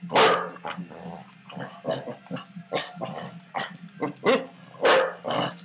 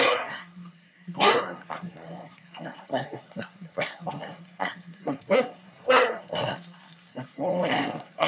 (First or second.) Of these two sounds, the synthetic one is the second